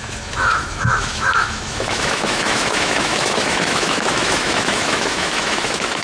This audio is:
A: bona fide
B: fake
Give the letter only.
B